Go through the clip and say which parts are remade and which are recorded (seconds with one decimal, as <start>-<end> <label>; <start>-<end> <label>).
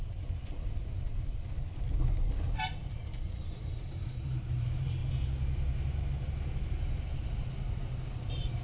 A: 0.0-1.9 remade; 1.9-2.9 recorded; 2.9-5.0 remade; 5.0-7.5 recorded; 7.5-8.6 remade